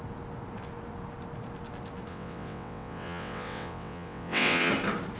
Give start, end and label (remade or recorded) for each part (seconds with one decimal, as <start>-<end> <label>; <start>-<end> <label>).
0.0-2.1 recorded; 2.1-4.7 remade; 4.7-5.2 recorded